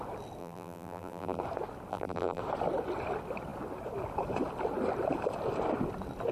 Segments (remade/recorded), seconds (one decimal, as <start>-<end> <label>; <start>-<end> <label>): 0.0-0.4 recorded; 0.4-1.4 remade; 1.4-1.9 recorded; 1.9-2.4 remade; 2.4-6.3 recorded